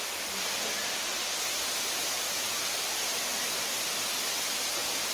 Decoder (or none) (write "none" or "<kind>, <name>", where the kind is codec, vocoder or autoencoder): none